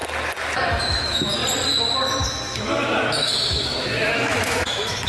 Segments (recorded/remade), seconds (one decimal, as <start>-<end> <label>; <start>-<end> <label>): 0.0-0.8 recorded; 0.8-1.4 remade; 1.4-2.1 recorded; 2.1-5.1 remade